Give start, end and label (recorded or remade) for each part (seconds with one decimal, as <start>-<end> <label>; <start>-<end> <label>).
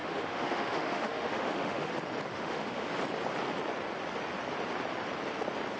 0.0-1.9 remade; 1.9-2.3 recorded; 2.3-2.9 remade; 2.9-5.8 recorded